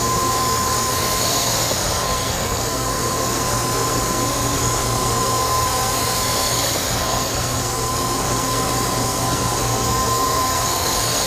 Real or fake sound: fake